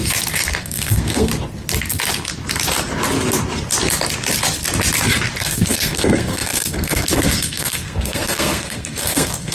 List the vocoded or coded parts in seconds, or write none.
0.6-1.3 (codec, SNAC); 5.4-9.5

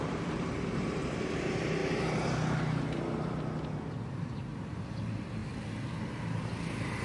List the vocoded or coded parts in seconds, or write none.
0.0-1.8 (vocoder, BigVGAN v2); 4.1-4.5; 5.0-5.4; 6.1-7.0

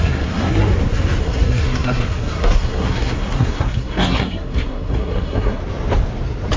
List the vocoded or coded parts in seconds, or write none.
0.0-0.7 (codec, SNAC); 1.2-5.6

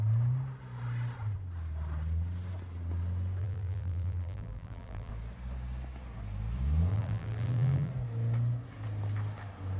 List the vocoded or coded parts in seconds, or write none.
3.4-5.1 (vocoder, BigVGAN v2); 6.9-7.9

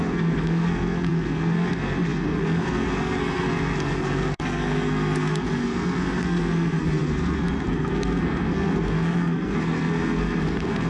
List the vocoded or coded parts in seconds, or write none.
0.0-10.9 (codec, SNAC)

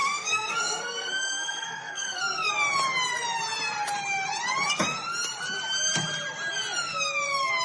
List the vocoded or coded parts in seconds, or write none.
0.0-2.5 (codec, SNAC)

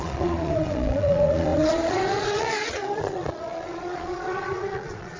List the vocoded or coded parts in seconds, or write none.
0.0-5.2 (vocoder, Vocos)